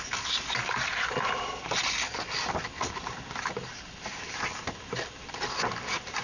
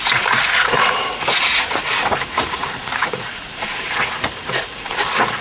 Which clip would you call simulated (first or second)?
second